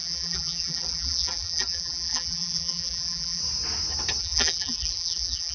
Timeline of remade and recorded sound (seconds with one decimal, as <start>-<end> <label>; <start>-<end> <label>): 0.0-3.4 remade; 3.4-4.2 recorded; 4.2-5.5 remade